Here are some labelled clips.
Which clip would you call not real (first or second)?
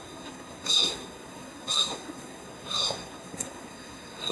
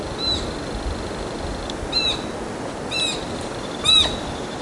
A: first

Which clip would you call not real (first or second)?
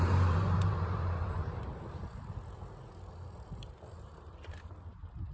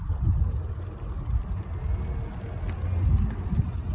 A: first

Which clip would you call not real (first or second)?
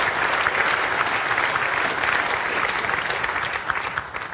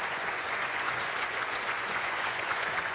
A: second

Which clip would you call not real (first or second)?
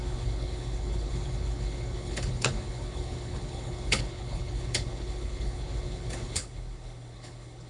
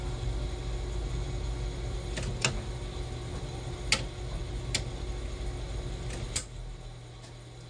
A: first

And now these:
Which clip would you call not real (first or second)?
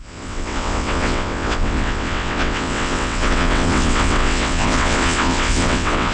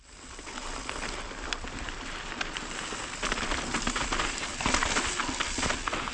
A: first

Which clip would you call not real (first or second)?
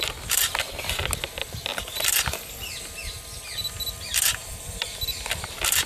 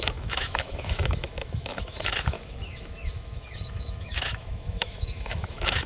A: second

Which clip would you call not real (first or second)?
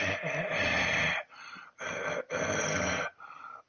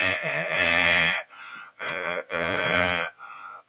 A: second